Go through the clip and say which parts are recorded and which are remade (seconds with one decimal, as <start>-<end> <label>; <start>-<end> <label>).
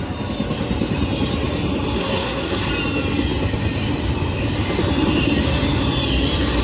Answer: 0.0-2.0 recorded; 2.0-2.7 remade; 2.7-6.6 recorded